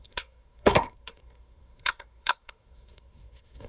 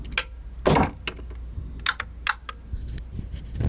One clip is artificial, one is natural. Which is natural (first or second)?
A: second